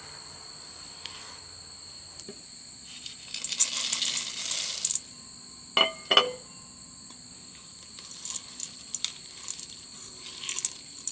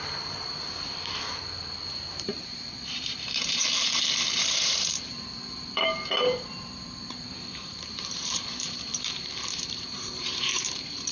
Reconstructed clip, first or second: second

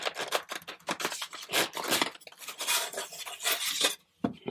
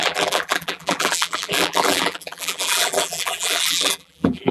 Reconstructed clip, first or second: second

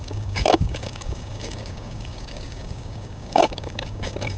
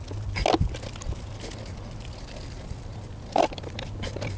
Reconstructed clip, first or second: first